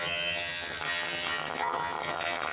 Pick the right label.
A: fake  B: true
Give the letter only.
A